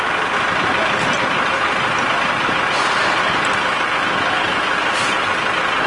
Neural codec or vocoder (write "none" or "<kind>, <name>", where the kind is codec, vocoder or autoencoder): none